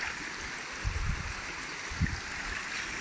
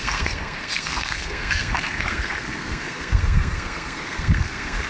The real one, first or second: first